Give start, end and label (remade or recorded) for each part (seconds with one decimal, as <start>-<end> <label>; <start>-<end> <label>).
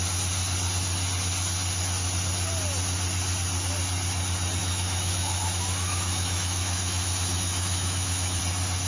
0.0-4.6 recorded; 4.6-8.4 remade; 8.4-8.9 recorded